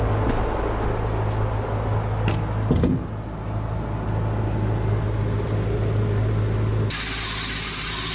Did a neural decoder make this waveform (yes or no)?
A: no